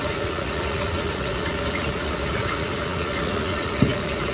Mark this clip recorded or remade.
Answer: remade